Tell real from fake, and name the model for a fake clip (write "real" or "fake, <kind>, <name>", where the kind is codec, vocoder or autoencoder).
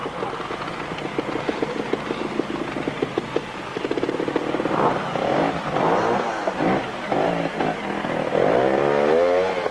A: real